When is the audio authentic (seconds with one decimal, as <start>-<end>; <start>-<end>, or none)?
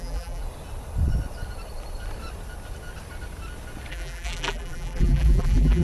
0.4-3.9